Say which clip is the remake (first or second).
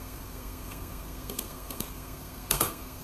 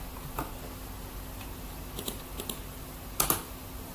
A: first